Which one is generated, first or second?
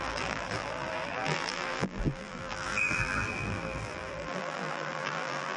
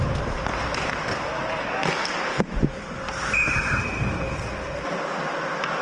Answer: first